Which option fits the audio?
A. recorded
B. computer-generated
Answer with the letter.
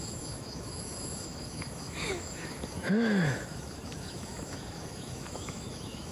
B